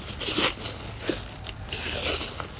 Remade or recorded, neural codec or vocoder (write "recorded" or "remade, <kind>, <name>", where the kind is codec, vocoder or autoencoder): recorded